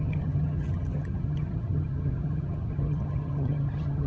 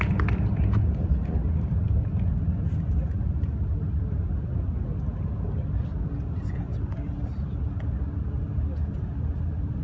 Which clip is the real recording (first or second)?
second